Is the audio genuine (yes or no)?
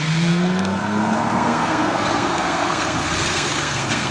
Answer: no